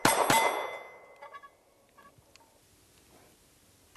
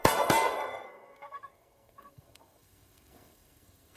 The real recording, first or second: first